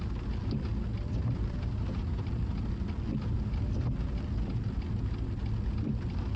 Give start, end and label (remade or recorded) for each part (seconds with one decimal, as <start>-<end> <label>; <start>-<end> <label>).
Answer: 0.0-1.2 recorded; 1.2-2.4 remade; 2.4-6.4 recorded